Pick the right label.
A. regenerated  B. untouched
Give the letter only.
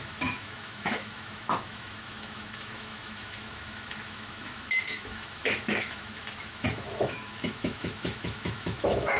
A